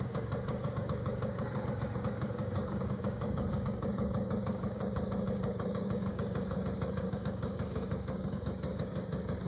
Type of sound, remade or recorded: remade